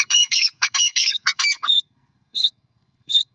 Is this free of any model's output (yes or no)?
no